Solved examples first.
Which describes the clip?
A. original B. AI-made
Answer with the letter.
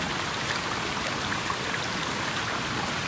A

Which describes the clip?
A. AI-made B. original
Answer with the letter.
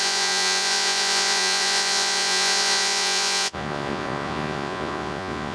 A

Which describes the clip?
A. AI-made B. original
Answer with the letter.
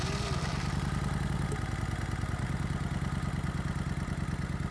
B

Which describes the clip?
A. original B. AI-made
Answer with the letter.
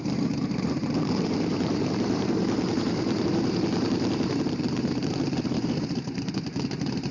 B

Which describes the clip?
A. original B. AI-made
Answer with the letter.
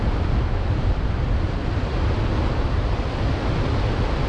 A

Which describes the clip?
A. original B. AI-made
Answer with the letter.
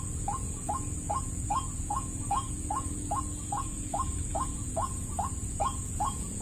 B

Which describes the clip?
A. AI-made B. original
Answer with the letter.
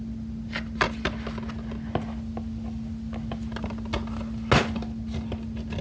B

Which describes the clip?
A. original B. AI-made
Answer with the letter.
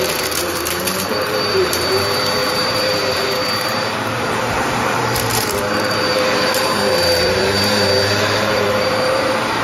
B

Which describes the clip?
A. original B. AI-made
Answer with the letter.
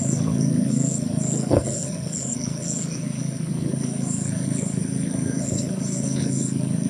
B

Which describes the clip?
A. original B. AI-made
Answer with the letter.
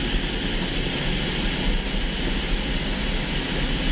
A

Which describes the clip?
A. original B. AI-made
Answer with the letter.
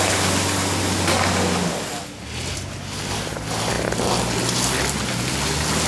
A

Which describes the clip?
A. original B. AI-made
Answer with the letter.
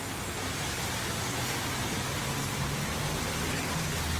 A